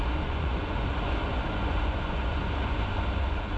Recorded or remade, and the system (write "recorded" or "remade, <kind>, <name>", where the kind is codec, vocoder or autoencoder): remade, vocoder, Vocos